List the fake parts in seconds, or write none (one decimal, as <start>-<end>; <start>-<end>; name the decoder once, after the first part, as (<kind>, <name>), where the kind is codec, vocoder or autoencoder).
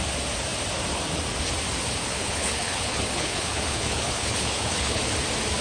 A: 2.0-5.0 (codec, HILCodec)